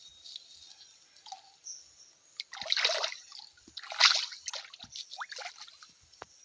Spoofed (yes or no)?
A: no